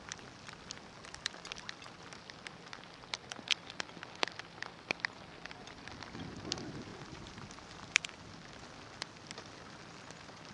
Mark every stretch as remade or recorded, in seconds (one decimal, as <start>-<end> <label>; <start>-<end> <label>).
0.0-6.9 recorded; 6.9-7.4 remade; 7.4-10.5 recorded